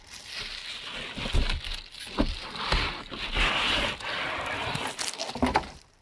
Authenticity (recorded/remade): recorded